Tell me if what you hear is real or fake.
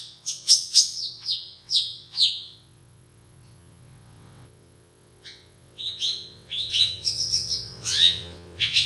fake